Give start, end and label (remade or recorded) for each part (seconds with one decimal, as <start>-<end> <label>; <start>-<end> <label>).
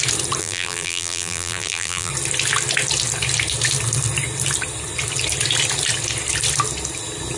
0.0-0.4 recorded; 0.4-2.1 remade; 2.1-7.4 recorded